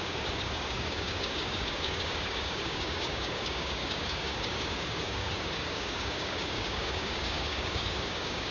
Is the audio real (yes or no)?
no